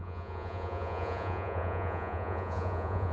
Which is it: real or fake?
fake